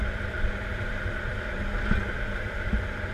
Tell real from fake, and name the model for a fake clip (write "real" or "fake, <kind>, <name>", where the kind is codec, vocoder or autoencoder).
fake, vocoder, BigVGAN v2